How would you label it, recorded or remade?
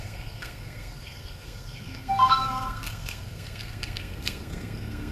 remade